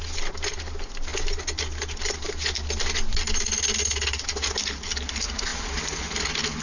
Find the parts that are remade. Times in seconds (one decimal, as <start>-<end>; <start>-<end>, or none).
none